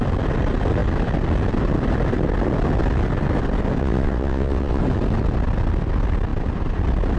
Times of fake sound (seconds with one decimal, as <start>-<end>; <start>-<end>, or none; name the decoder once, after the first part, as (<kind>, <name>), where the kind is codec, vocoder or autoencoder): 3.8-4.8 (vocoder, WaveNeXt)